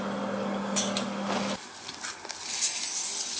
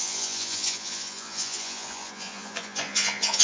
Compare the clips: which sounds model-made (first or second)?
second